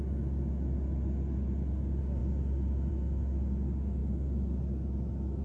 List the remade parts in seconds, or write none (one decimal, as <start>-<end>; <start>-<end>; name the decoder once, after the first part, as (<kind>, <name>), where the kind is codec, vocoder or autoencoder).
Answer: none